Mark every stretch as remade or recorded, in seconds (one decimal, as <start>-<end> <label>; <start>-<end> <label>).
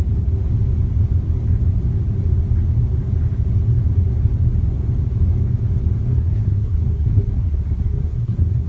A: 0.0-6.1 recorded; 6.1-8.7 remade